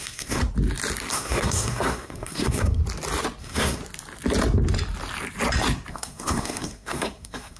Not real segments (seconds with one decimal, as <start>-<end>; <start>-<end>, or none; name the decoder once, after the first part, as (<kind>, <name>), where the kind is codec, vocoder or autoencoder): 0.0-0.4 (codec, SNAC); 1.1-2.8; 3.4-3.8; 5.9-7.6

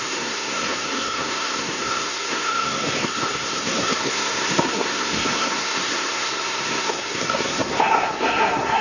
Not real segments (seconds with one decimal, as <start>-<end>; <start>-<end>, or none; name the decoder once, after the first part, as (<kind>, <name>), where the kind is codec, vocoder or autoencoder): 0.0-8.8 (codec, SNAC)